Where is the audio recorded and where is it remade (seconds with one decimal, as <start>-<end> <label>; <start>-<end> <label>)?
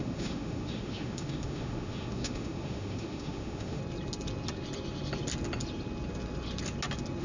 0.0-3.8 remade; 3.8-7.2 recorded